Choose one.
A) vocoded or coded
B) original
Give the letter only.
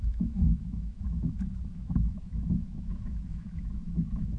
A